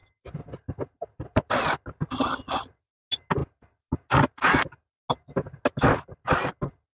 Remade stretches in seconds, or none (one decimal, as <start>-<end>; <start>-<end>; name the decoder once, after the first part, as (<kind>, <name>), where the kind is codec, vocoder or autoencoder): none